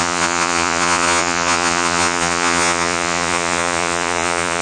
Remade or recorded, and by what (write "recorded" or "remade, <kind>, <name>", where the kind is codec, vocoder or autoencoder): remade, vocoder, Vocos